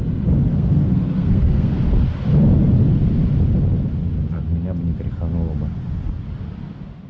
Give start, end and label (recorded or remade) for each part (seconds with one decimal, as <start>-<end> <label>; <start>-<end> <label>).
0.0-0.5 recorded; 0.5-1.8 remade; 1.8-7.1 recorded